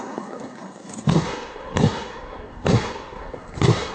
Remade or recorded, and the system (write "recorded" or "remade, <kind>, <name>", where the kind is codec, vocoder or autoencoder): remade, codec, SNAC